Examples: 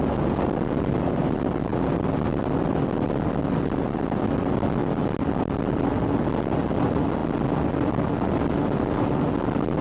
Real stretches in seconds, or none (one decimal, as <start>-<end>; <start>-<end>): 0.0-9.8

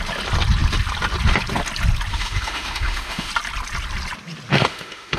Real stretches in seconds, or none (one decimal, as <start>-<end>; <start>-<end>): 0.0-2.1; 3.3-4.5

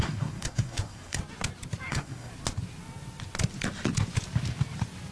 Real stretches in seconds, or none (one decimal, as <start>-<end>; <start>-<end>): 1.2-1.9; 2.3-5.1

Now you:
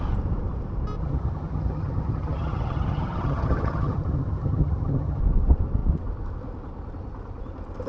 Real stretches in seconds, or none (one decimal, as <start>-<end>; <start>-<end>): 0.0-1.0; 5.2-7.9

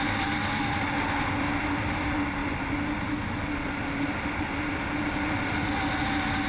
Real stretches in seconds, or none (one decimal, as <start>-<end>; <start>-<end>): 0.0-6.5